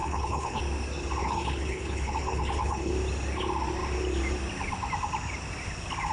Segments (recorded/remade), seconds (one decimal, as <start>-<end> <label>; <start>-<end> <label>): 0.0-0.6 remade; 0.6-1.2 recorded; 1.2-2.9 remade; 2.9-6.1 recorded